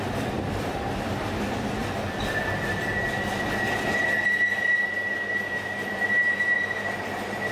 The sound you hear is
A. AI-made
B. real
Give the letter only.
B